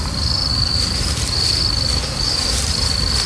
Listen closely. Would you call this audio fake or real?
real